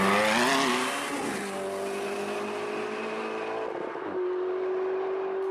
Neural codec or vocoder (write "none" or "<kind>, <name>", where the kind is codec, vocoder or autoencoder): none